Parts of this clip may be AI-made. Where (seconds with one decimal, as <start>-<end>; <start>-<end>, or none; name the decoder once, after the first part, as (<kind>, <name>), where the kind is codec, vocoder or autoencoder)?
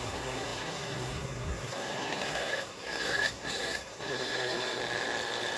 0.0-4.8 (codec, SNAC)